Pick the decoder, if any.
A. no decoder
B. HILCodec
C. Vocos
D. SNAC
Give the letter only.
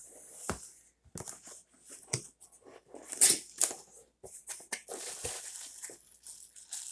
A